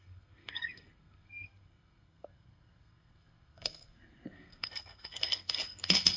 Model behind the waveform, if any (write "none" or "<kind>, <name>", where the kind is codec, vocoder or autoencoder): codec, SNAC